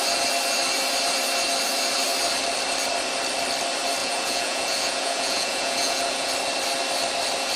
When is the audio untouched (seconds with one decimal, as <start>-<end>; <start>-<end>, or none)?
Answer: 0.0-4.0; 6.3-7.6